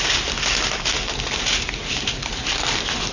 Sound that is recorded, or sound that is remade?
recorded